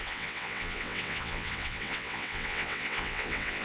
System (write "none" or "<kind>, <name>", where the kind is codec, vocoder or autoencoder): vocoder, WaveNeXt